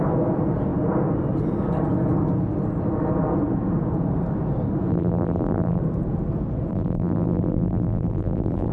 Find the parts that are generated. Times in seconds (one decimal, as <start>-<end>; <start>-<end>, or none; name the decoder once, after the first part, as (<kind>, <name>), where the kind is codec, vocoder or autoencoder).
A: 4.9-5.8 (vocoder, BigVGAN v2); 6.7-8.7